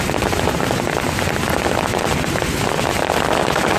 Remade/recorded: recorded